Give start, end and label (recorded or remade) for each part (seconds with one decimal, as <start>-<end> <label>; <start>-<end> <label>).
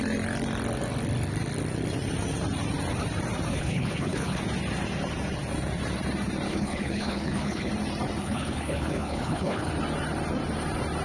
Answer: 0.0-3.5 recorded; 3.5-4.4 remade; 4.4-6.5 recorded; 6.5-7.7 remade; 7.7-8.2 recorded; 8.2-9.7 remade; 9.7-11.0 recorded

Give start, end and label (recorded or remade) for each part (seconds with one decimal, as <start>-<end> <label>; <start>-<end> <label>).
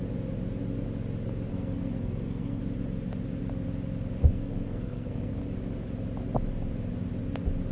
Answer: 0.0-1.5 recorded; 1.5-2.6 remade; 2.6-4.2 recorded; 4.2-5.4 remade; 5.4-7.7 recorded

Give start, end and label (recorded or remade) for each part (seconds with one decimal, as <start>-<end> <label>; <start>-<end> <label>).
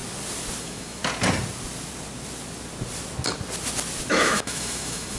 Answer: 0.0-0.6 recorded; 0.6-1.0 remade; 1.0-4.1 recorded; 4.1-5.2 remade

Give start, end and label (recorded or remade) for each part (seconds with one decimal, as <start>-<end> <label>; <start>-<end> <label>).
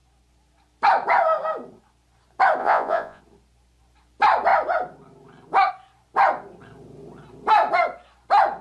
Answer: 0.0-2.6 recorded; 2.6-3.2 remade; 3.2-8.6 recorded